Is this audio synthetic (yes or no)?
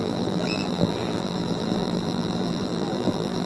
yes